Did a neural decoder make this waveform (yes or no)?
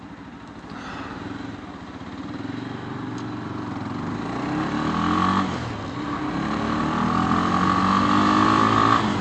no